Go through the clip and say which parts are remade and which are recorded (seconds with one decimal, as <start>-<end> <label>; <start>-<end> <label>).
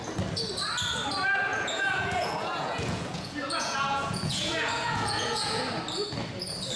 0.0-1.5 recorded; 1.5-5.6 remade; 5.6-6.8 recorded